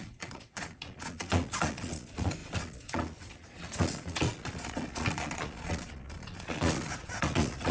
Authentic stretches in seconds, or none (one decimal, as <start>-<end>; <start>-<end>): none